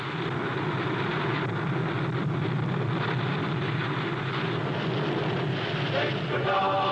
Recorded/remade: recorded